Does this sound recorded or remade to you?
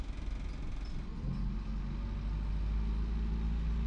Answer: recorded